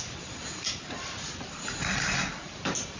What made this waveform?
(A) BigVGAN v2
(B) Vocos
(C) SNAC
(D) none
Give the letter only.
D